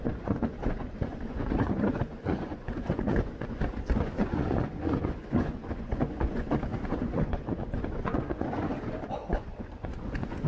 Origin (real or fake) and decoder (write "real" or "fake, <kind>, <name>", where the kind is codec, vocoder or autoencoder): fake, vocoder, Vocos